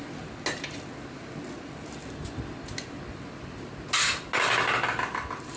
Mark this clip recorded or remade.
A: recorded